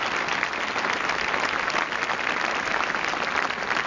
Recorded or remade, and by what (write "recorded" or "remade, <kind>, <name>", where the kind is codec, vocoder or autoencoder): recorded